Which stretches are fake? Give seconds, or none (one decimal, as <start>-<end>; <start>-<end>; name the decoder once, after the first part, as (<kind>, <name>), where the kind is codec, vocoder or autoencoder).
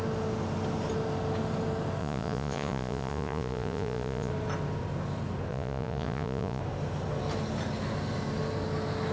2.0-4.3 (vocoder, Vocos); 5.5-6.6